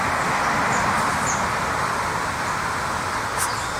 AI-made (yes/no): no